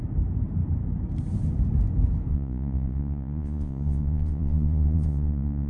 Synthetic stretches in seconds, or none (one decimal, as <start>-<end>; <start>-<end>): 2.3-5.7